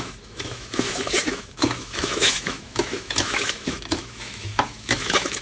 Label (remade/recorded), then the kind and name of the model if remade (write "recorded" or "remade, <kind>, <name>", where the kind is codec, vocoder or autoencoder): remade, autoencoder, DAC-VAE